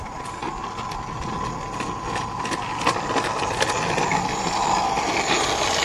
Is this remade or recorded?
recorded